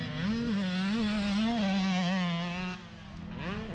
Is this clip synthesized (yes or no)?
no